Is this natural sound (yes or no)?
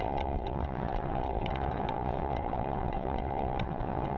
no